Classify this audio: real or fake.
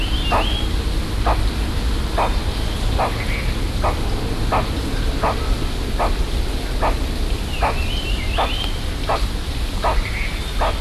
real